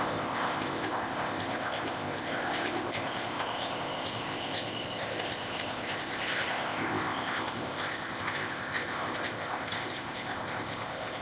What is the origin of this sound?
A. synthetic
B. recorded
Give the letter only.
A